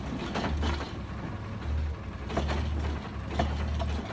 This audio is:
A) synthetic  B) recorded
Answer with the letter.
B